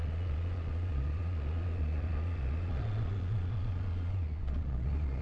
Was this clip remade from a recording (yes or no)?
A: yes